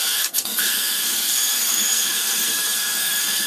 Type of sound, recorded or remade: remade